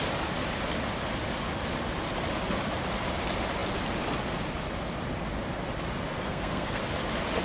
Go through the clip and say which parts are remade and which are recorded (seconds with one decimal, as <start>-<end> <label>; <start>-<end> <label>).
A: 0.0-6.2 recorded; 6.2-6.8 remade; 6.8-7.4 recorded